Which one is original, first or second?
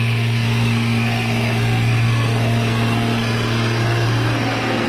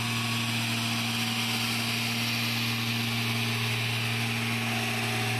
second